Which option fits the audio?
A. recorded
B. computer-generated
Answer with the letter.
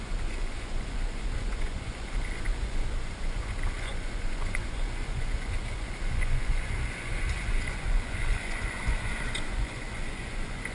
B